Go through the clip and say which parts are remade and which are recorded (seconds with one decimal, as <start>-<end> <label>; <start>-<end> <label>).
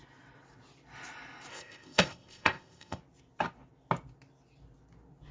0.0-1.5 recorded; 1.5-3.0 remade; 3.0-5.3 recorded